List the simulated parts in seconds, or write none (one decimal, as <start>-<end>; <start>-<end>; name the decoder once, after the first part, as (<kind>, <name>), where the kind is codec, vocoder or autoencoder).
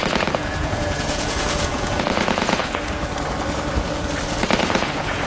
0.0-3.0 (vocoder, Vocos); 4.6-5.3